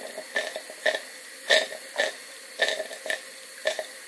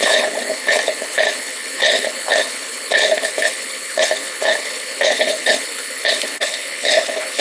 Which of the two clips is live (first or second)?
first